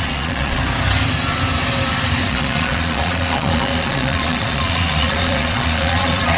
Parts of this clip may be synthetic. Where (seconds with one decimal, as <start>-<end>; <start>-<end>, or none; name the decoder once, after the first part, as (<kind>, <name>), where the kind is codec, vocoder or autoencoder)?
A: 0.0-0.6 (vocoder, Vocos); 2.2-6.4